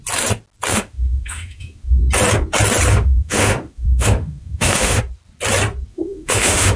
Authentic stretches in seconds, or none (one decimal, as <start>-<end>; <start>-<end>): 0.0-0.7; 2.0-2.9; 5.0-5.9